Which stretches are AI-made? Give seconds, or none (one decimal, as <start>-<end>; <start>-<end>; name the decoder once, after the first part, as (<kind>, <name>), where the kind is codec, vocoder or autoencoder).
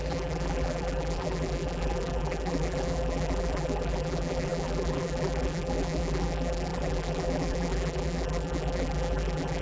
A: 0.0-9.6 (vocoder, BigVGAN v2)